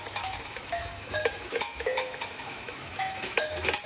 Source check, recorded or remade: remade